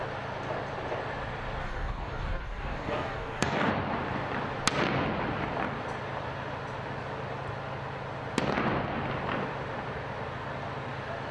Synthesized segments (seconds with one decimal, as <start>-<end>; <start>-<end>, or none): 1.6-3.7